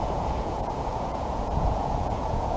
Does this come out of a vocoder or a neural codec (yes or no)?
yes